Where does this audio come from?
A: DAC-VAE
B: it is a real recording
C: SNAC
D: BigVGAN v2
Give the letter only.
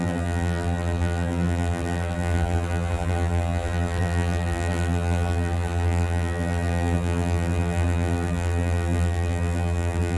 D